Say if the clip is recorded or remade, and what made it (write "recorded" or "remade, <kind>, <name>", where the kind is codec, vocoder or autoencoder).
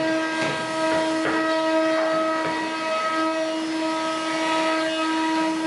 recorded